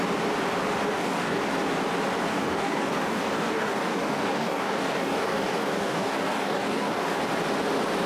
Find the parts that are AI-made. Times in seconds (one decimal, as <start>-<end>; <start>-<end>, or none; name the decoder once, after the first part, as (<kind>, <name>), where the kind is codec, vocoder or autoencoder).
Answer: 0.9-1.4 (codec, DAC); 2.3-7.2